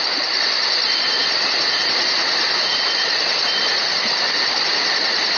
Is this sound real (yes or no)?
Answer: yes